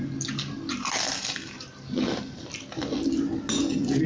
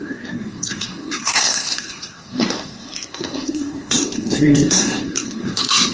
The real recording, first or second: first